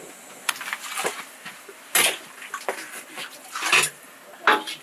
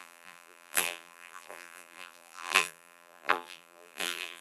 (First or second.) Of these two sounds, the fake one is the second